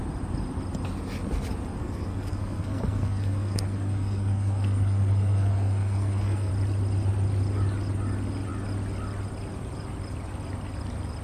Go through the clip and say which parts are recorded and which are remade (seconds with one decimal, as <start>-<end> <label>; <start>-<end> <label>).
0.0-1.8 recorded; 1.8-6.5 remade; 6.5-11.2 recorded